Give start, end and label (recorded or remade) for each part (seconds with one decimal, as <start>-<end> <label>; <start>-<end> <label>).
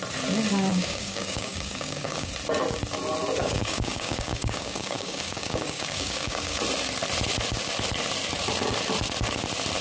0.0-0.7 recorded; 0.7-2.3 remade; 2.3-3.4 recorded; 3.4-6.6 remade; 6.6-9.8 recorded